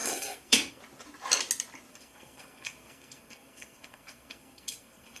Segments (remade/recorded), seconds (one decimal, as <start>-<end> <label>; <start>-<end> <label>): 0.0-0.8 remade; 0.8-1.9 recorded; 1.9-5.2 remade